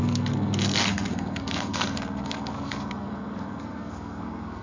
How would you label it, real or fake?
fake